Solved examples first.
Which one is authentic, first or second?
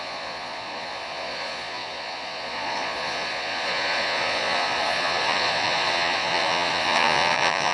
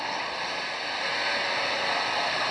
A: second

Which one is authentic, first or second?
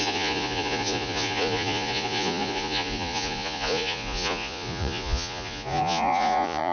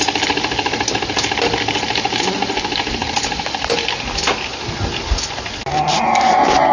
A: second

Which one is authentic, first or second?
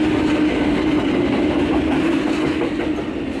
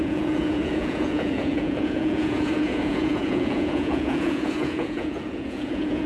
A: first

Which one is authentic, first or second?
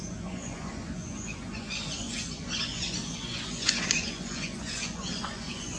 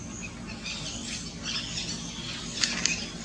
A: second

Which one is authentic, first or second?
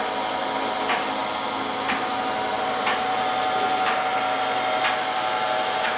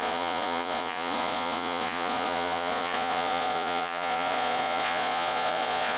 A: first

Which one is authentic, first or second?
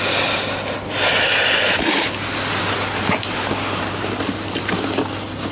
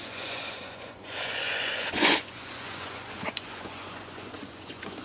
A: first